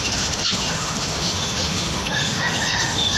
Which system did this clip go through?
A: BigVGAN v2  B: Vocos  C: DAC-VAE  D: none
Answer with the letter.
C